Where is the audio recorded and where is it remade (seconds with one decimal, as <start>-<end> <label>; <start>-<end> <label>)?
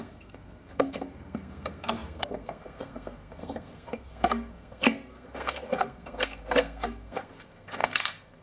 0.0-8.4 remade